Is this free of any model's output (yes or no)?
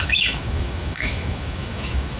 no